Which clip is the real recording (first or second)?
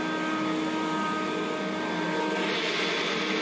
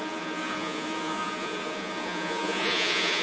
first